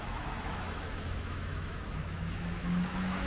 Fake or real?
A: fake